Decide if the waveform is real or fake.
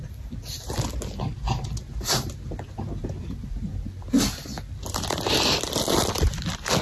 real